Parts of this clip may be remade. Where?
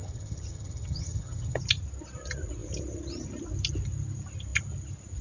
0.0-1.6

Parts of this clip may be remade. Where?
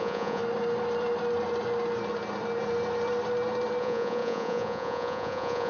0.0-0.4; 3.8-5.7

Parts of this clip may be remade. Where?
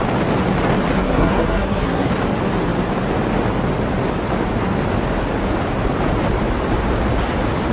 1.0-2.1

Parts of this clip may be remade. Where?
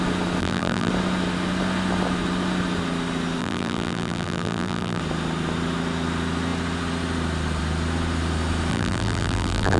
0.4-0.9; 3.4-5.0; 8.7-9.8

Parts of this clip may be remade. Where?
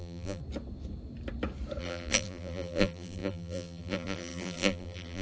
0.0-0.4; 1.8-5.2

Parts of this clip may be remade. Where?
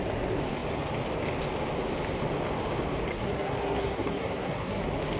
3.1-4.8